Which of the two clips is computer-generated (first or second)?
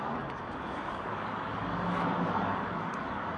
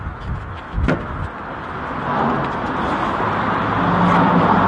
first